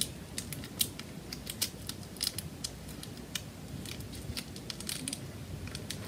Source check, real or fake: real